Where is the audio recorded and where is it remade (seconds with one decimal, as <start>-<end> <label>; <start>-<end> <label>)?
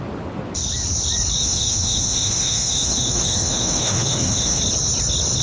0.0-1.4 recorded; 1.4-4.6 remade; 4.6-5.4 recorded